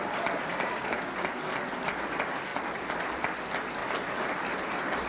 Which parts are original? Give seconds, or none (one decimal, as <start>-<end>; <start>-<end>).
0.0-0.5; 1.1-5.1

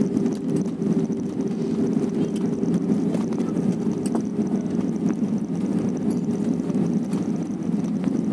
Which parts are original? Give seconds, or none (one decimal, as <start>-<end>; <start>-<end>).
0.0-8.3

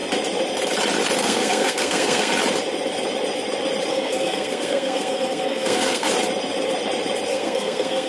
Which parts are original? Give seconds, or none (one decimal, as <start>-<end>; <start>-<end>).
0.0-1.2; 2.3-3.9; 6.1-7.3

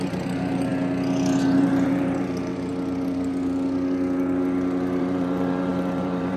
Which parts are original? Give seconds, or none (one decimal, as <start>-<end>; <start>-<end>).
0.7-1.6; 2.7-5.0

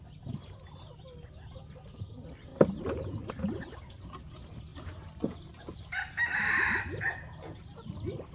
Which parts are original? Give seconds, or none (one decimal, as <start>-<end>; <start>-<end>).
0.0-4.7; 5.7-8.3

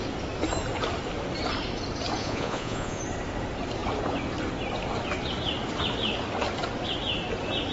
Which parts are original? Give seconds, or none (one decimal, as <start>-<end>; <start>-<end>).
0.0-2.2; 3.0-7.7

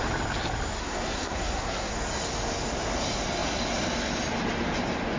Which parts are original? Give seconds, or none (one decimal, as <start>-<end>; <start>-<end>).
0.0-0.8; 1.9-5.2